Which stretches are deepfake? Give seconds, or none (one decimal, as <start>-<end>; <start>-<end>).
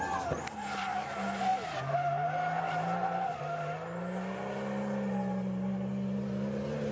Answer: none